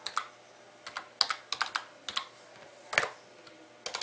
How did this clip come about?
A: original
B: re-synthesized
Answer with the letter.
A